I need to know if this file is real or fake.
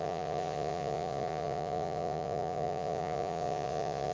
fake